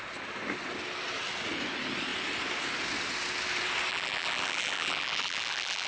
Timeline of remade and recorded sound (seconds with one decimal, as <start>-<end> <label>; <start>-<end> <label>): 0.0-3.9 recorded; 3.9-5.9 remade